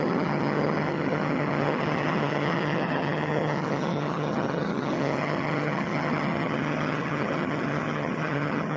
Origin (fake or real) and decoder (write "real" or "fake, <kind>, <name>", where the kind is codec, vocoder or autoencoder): fake, vocoder, HiFi-GAN